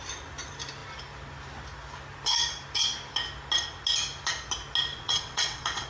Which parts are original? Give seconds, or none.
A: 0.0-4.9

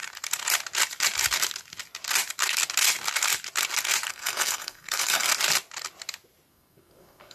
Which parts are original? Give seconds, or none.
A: 0.0-4.1; 5.3-6.5

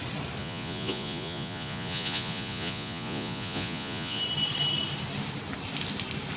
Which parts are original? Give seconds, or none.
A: 0.0-0.4; 4.2-6.4